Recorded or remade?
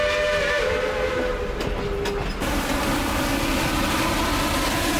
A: recorded